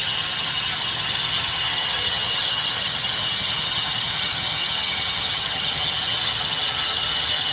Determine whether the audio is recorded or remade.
remade